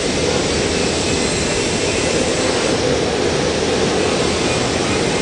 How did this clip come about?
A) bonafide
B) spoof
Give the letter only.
A